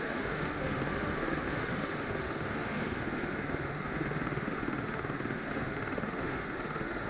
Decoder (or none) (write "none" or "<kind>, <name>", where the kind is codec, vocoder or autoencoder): autoencoder, DAC-VAE